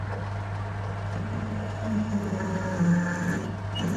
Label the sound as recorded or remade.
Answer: recorded